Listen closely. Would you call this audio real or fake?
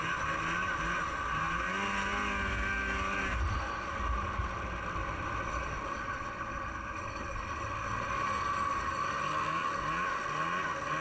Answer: real